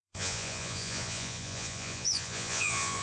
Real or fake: fake